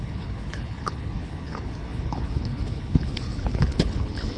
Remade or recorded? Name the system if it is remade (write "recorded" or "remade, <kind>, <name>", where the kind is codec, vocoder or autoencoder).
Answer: remade, codec, HILCodec